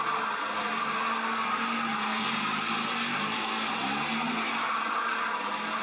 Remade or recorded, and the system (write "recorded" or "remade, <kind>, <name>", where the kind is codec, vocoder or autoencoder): recorded